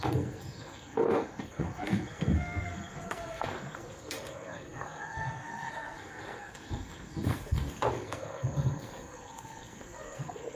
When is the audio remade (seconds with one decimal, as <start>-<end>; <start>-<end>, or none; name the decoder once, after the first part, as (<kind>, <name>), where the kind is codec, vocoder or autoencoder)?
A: 0.0-10.5 (codec, SNAC)